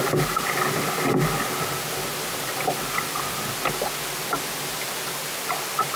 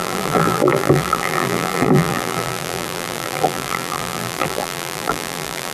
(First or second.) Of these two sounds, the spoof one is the second